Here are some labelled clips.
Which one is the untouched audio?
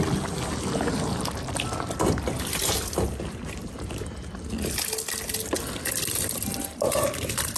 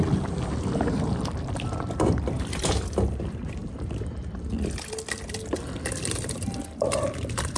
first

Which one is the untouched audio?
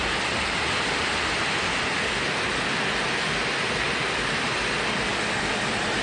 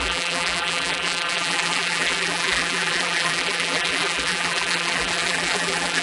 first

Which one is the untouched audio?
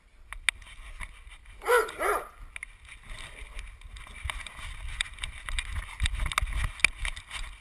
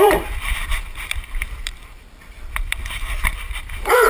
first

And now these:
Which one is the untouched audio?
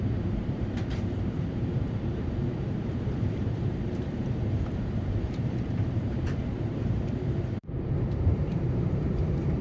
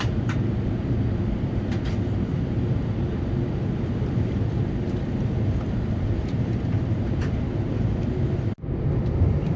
second